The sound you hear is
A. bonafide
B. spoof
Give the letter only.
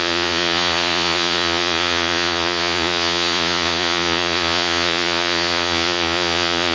B